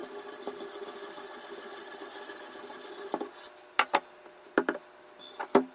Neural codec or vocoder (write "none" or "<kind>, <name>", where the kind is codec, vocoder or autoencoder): none